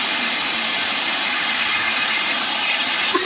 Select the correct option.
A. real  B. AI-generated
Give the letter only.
B